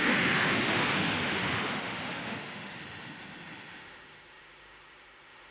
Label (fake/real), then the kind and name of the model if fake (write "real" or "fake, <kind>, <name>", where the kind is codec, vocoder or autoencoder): fake, autoencoder, DAC-VAE